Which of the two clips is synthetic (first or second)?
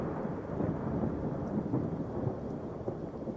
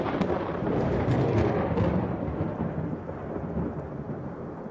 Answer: first